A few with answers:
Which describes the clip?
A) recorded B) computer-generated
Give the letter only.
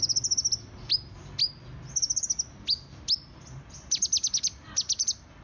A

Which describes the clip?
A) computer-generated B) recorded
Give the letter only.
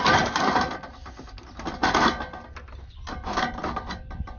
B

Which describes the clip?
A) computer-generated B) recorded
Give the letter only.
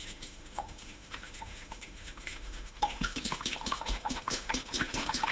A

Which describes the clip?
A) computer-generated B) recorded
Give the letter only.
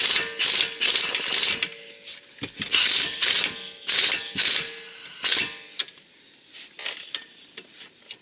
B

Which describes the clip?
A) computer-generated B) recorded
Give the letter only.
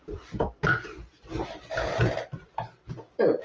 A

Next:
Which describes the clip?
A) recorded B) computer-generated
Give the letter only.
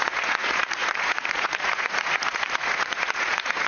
B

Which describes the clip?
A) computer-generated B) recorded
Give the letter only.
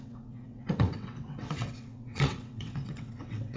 A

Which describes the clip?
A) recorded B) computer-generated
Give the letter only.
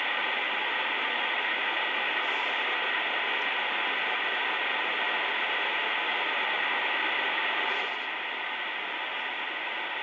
A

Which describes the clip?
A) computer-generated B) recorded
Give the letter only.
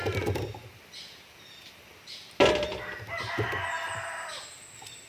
B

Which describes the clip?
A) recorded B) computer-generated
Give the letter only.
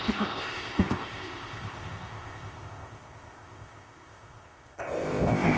B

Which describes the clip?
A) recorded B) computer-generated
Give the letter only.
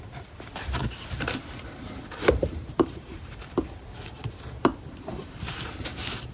B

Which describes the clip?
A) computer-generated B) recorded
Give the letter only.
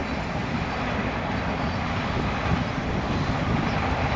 B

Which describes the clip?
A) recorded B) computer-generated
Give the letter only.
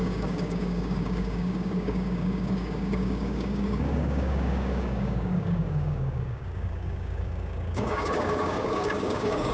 B